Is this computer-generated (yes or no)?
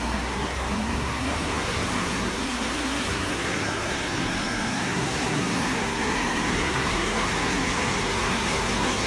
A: yes